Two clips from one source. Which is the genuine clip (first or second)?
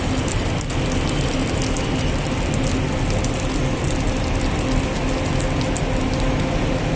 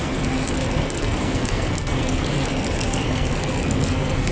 first